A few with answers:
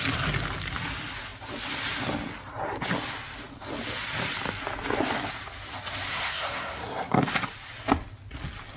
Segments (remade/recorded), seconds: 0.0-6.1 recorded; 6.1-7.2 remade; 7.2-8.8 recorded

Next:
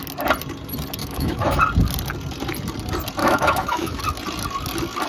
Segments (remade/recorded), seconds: 0.0-1.0 recorded; 1.0-1.6 remade; 1.6-3.2 recorded; 3.2-4.0 remade; 4.0-5.1 recorded

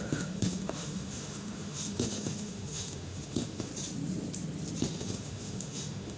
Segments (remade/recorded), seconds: 0.0-3.7 remade; 3.7-4.9 recorded; 4.9-6.2 remade